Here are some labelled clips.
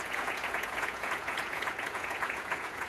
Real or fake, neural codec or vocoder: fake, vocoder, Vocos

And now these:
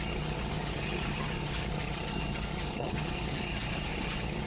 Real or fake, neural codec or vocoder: fake, vocoder, HiFi-GAN